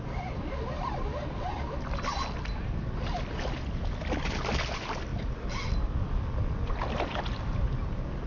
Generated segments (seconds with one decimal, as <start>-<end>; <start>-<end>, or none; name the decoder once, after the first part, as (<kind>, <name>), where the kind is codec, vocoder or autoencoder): none